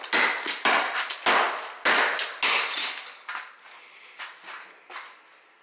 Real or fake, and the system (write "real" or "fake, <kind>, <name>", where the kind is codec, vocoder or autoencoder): real